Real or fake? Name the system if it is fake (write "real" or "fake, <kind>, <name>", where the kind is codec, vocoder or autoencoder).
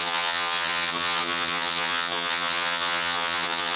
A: fake, vocoder, HiFi-GAN